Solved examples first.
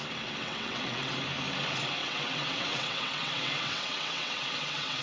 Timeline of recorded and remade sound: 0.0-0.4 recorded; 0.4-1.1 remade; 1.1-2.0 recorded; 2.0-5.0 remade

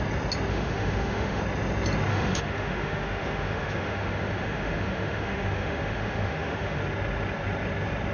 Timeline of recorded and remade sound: 0.0-0.5 recorded; 0.5-1.4 remade; 1.4-2.1 recorded; 2.1-6.8 remade; 6.8-8.1 recorded